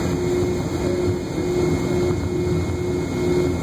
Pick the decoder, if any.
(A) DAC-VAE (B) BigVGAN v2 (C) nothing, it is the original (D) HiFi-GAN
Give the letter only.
C